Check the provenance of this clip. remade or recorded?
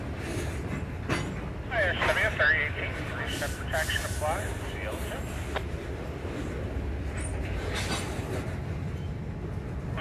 recorded